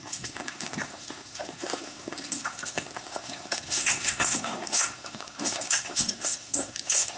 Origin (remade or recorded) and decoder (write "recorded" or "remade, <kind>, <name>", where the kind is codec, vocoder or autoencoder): remade, codec, SNAC